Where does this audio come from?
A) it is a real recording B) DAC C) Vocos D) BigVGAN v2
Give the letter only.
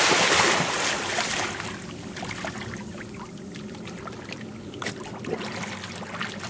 A